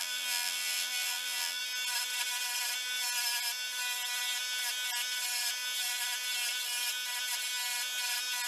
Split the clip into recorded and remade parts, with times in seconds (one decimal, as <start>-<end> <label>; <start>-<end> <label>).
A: 0.0-1.6 remade; 1.6-8.5 recorded